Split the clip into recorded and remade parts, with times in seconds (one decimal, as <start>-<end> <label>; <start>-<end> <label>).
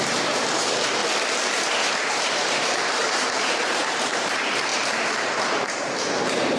0.0-1.0 remade; 1.0-1.7 recorded; 1.7-6.6 remade